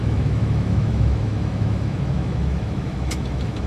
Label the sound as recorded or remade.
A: remade